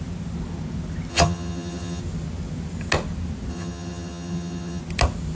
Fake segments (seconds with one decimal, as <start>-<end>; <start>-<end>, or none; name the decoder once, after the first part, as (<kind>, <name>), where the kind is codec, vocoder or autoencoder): 1.1-2.0 (vocoder, HiFi-GAN); 3.5-4.8